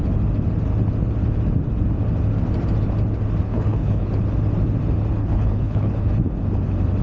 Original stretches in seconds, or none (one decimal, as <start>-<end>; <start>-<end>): 0.0-3.4; 4.1-5.2; 6.1-7.0